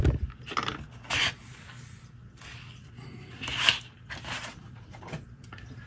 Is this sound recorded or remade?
recorded